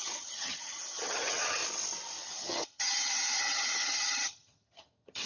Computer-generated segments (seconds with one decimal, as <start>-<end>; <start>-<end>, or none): 0.0-1.6; 2.2-5.3